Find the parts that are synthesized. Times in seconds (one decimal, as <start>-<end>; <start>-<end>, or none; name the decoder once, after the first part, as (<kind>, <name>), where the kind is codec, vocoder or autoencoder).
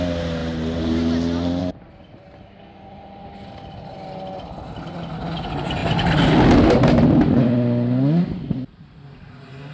none